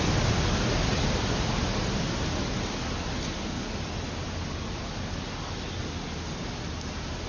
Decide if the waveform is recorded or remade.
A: recorded